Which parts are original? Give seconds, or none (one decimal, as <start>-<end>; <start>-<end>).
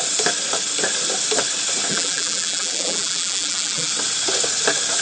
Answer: 0.0-1.9; 3.9-5.0